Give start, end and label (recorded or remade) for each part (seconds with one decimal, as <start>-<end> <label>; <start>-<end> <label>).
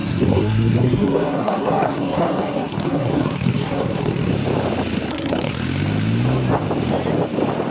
0.0-4.3 remade; 4.3-5.1 recorded; 5.1-5.6 remade; 5.6-7.7 recorded